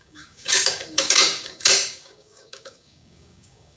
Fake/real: fake